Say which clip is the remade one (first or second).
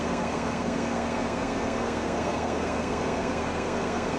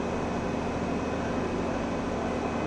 first